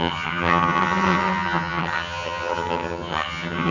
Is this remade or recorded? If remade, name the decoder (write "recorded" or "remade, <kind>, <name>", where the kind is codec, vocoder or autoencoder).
remade, vocoder, HiFi-GAN